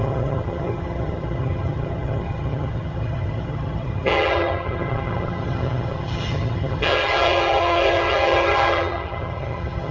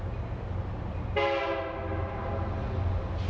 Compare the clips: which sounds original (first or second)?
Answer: second